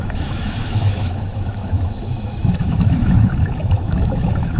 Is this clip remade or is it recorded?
remade